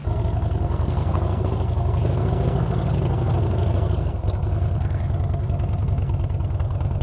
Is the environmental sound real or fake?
fake